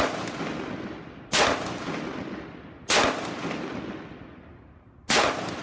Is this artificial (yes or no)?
no